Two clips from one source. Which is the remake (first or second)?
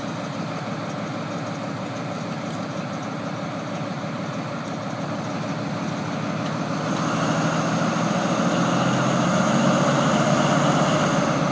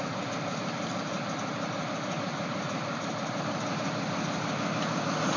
second